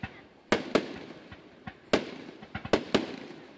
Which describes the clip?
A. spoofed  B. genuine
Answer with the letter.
B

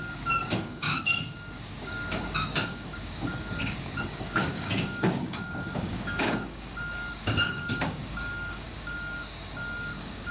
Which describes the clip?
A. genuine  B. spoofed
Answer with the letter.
B